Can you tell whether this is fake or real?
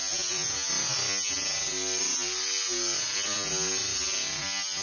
real